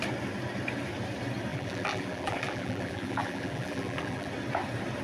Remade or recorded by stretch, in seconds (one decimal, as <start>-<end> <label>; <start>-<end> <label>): 0.0-1.5 recorded; 1.5-4.3 remade; 4.3-5.0 recorded